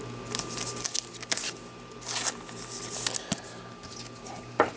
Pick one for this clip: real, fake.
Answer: real